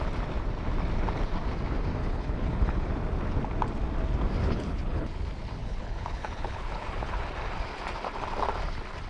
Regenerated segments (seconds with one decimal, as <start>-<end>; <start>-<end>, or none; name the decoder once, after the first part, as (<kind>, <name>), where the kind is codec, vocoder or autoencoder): 2.0-2.9 (codec, HILCodec); 4.4-5.1; 5.6-7.2